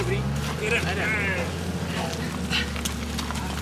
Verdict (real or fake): real